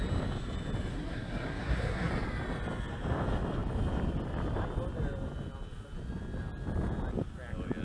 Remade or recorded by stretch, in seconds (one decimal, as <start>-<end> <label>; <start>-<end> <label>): 0.0-0.9 recorded; 0.9-2.1 remade; 2.1-7.8 recorded

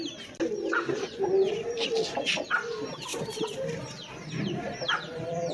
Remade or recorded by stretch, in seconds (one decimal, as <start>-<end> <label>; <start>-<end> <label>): 0.0-5.5 recorded

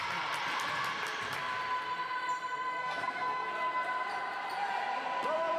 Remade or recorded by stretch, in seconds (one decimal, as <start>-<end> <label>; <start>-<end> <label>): 0.0-2.8 recorded; 2.8-3.5 remade; 3.5-5.6 recorded

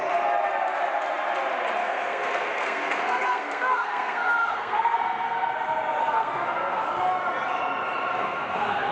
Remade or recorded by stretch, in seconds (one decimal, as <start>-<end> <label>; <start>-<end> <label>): 0.0-1.8 recorded; 1.8-5.5 remade; 5.5-6.0 recorded; 6.0-6.9 remade; 6.9-8.1 recorded; 8.1-8.9 remade

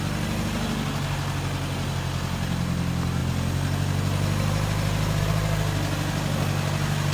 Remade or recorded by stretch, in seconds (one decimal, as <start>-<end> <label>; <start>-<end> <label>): 0.0-7.1 recorded

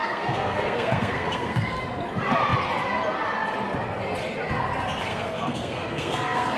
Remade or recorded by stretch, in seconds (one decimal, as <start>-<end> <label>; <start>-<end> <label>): 0.0-1.8 remade; 1.8-5.1 recorded; 5.1-6.6 remade